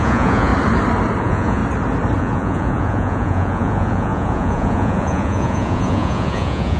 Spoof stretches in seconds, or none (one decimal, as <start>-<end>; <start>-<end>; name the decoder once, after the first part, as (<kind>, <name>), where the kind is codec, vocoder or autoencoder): 0.0-0.5 (vocoder, Vocos); 1.2-1.6; 2.2-6.8

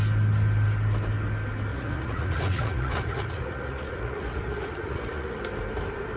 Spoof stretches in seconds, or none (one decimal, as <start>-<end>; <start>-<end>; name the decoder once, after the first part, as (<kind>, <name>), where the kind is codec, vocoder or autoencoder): 1.7-5.4 (vocoder, Vocos)

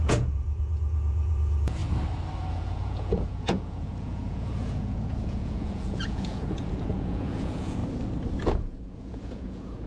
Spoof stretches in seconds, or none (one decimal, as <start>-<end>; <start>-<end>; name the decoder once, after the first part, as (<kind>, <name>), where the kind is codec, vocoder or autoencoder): 0.0-1.8 (vocoder, Vocos); 2.5-7.8; 8.4-9.9

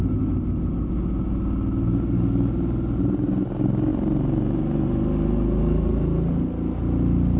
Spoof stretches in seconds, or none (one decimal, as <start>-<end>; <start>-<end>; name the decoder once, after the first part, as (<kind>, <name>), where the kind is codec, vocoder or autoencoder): none